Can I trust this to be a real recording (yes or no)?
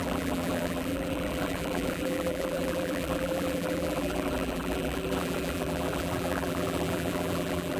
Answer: no